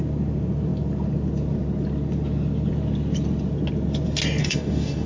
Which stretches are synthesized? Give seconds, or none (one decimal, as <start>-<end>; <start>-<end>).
4.4-5.1